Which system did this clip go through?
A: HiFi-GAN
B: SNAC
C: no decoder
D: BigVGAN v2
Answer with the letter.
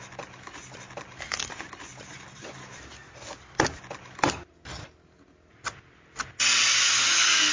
C